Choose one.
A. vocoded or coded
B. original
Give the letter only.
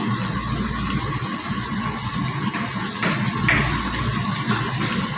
B